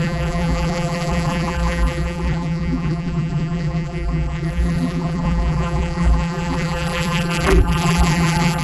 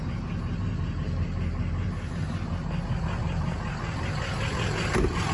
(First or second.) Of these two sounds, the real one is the second